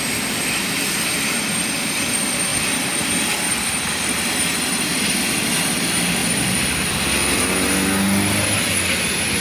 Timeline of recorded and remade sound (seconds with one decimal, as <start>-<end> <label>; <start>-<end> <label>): 0.0-6.2 recorded; 6.2-7.4 remade; 7.4-9.4 recorded